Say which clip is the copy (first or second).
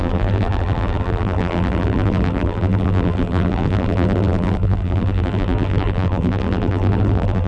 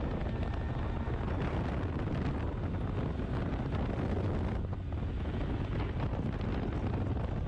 first